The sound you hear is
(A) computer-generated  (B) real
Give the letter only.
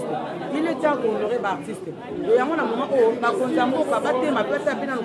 B